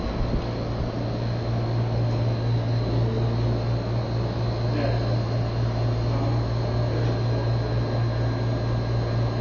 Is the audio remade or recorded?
recorded